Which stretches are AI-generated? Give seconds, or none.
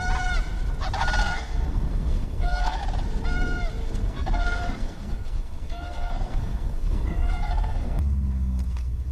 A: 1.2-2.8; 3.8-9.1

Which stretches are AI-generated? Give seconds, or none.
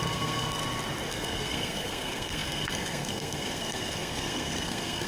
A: 0.0-0.6; 1.1-5.1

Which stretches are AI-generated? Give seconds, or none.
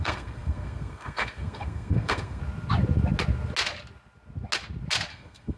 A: 0.0-2.4; 5.1-5.6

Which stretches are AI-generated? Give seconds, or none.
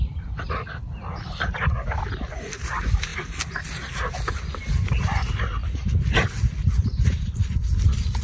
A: none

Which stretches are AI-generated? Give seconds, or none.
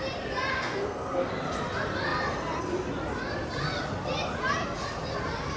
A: 0.5-1.3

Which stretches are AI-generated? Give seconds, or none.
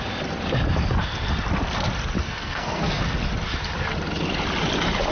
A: 2.2-3.0